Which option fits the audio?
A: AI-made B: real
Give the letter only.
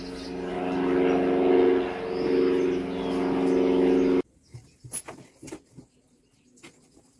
B